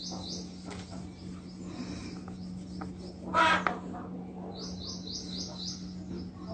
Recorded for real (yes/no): yes